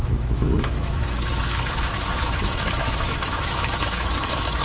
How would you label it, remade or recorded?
remade